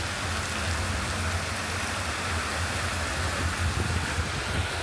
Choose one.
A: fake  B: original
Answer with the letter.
B